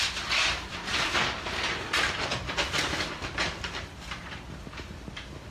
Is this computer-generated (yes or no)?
no